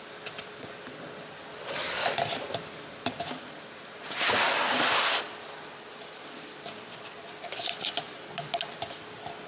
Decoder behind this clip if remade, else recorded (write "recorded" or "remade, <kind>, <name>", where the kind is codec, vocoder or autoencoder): recorded